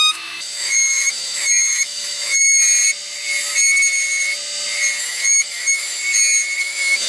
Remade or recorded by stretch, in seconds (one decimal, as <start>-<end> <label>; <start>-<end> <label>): 0.0-2.6 remade; 2.6-5.0 recorded; 5.0-6.0 remade; 6.0-6.6 recorded; 6.6-7.1 remade